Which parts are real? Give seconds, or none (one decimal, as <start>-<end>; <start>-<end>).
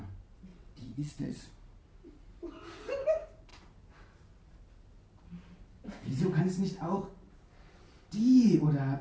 0.0-0.5; 1.4-9.0